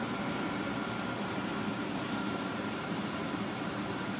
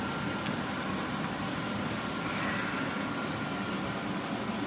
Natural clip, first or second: second